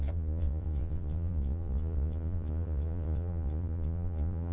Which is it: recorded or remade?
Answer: remade